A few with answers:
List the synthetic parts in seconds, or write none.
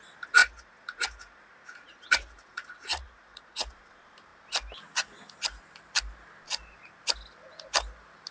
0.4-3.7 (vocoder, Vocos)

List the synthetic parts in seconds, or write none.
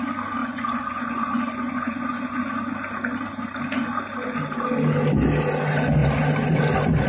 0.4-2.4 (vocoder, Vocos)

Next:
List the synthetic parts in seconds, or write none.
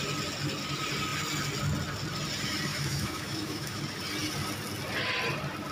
2.7-3.8 (autoencoder, DAC-VAE)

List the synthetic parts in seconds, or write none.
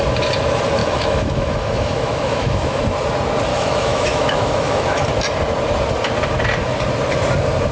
0.8-2.8 (autoencoder, DAC-VAE); 3.5-5.0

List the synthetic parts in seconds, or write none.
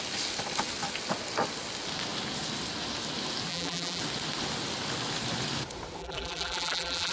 3.5-4.0 (vocoder, BigVGAN v2); 6.0-7.1